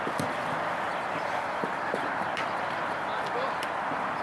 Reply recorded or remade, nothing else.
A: remade